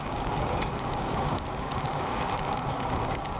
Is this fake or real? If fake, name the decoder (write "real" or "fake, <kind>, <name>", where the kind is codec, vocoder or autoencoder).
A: fake, codec, DAC